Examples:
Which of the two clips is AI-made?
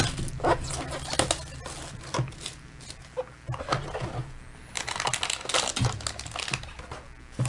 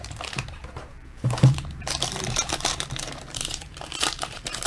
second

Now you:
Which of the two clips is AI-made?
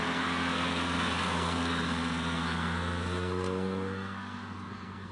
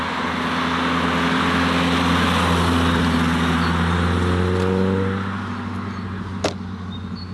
first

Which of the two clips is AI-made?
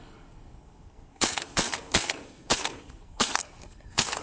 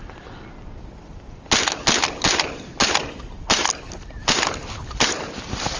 first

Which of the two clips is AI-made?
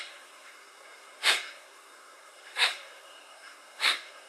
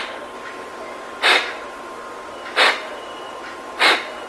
first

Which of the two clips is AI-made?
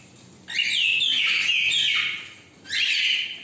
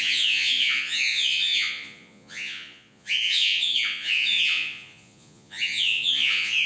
second